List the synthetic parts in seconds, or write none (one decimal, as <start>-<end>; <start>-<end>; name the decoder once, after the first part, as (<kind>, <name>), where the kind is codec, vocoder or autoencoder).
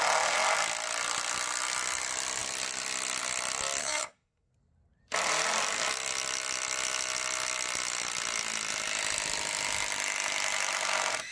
3.8-4.5 (codec, SNAC)